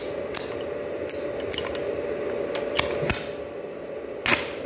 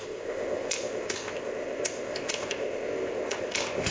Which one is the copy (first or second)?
second